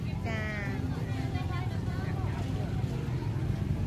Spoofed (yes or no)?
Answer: no